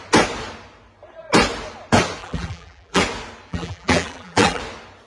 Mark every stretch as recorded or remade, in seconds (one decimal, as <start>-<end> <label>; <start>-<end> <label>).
0.0-2.2 recorded; 2.2-3.0 remade; 3.0-3.5 recorded; 3.5-4.6 remade; 4.6-5.1 recorded